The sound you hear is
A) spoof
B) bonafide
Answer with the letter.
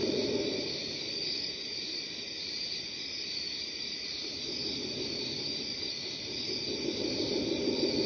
A